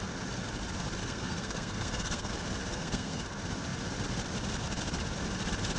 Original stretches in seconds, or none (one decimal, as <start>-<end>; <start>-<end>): 0.0-1.0; 2.3-2.7; 3.2-5.8